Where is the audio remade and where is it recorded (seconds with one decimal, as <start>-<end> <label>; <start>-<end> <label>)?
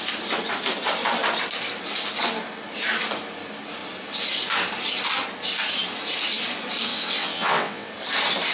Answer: 0.0-6.9 recorded; 6.9-7.9 remade; 7.9-8.5 recorded